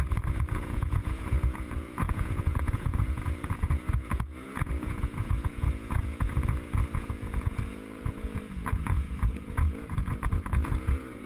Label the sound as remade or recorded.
remade